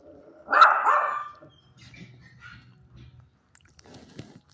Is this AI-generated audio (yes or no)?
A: no